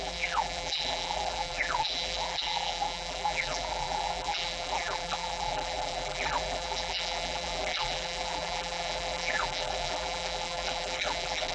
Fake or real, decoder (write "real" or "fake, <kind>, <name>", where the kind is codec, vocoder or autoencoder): fake, vocoder, BigVGAN v2